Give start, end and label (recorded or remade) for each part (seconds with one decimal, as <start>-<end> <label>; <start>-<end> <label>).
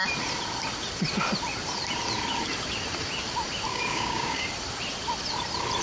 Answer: 0.0-3.7 recorded; 3.7-4.4 remade; 4.4-5.8 recorded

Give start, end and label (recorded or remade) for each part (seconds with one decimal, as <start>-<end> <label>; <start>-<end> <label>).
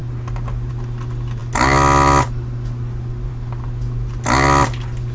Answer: 0.0-5.1 recorded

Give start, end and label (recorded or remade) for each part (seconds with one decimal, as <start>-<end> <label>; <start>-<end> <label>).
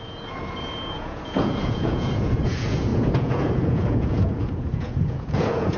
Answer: 0.0-5.8 remade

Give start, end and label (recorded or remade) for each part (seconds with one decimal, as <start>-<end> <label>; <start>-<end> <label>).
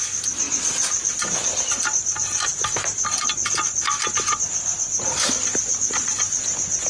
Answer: 0.0-6.9 recorded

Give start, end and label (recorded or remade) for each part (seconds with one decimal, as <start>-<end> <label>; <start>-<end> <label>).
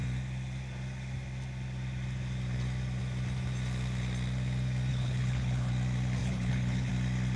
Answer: 0.0-4.9 recorded; 4.9-5.7 remade; 5.7-6.2 recorded; 6.2-6.9 remade; 6.9-7.4 recorded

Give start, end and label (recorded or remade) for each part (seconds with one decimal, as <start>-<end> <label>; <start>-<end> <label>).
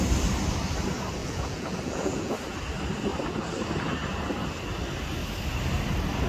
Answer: 0.0-1.2 recorded; 1.2-2.3 remade; 2.3-6.3 recorded